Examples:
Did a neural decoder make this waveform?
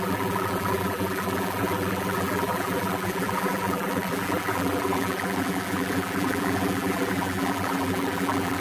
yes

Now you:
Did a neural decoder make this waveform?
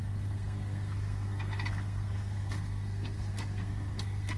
yes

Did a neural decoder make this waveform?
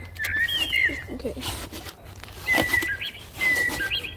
no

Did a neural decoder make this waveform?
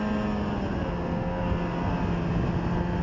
no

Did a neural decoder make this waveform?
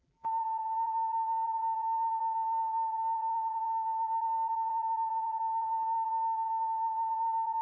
yes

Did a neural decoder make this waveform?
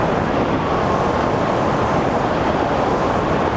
no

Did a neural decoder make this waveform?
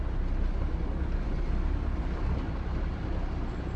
no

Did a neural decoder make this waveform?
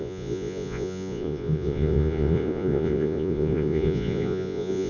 yes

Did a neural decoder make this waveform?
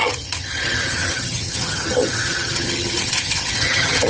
yes